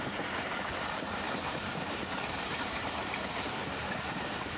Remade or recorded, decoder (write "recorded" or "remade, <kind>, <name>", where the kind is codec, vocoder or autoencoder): remade, vocoder, BigVGAN v2